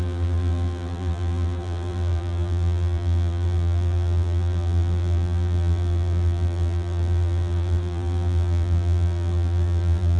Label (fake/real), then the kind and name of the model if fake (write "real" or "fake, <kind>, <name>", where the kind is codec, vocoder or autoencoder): fake, vocoder, BigVGAN v2